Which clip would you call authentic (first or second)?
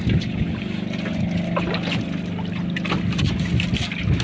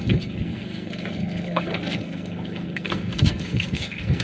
first